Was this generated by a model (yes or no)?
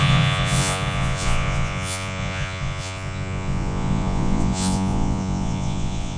yes